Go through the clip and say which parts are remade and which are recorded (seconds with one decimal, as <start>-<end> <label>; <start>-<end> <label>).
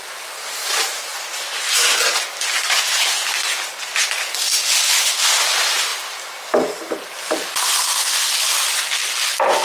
0.0-9.6 recorded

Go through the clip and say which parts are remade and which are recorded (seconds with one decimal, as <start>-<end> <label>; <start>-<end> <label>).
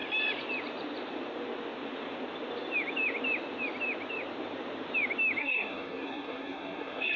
0.0-5.4 recorded; 5.4-7.2 remade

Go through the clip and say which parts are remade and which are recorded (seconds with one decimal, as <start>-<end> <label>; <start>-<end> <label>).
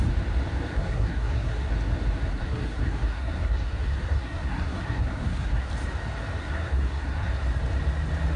0.0-0.7 recorded; 0.7-1.7 remade; 1.7-2.3 recorded; 2.3-5.7 remade; 5.7-6.4 recorded; 6.4-7.3 remade; 7.3-8.4 recorded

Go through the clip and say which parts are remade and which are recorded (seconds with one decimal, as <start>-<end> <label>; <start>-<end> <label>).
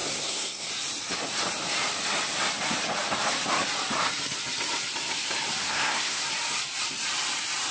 0.0-0.7 remade; 0.7-5.6 recorded; 5.6-6.2 remade; 6.2-7.7 recorded